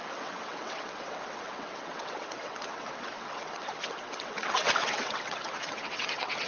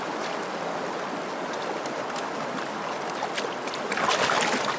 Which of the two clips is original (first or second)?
second